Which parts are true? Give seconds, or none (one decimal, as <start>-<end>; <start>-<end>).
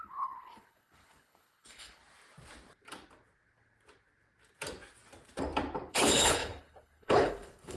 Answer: 2.0-5.9